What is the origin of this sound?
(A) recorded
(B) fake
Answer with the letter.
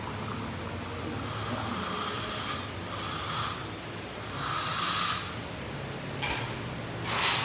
A